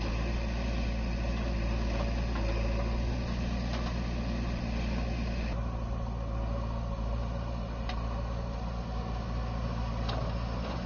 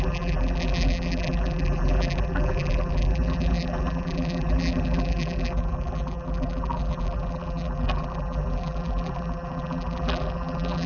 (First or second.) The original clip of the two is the first